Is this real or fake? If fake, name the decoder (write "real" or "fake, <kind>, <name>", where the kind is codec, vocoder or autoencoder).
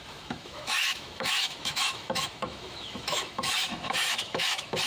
fake, autoencoder, DAC-VAE